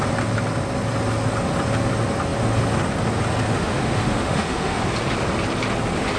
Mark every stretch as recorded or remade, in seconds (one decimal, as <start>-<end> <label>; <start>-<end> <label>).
0.0-3.5 recorded; 3.5-4.8 remade; 4.8-6.2 recorded